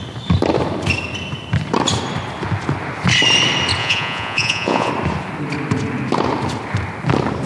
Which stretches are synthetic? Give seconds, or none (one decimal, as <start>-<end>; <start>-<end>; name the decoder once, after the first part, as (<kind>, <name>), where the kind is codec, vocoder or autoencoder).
3.8-4.9 (vocoder, Vocos)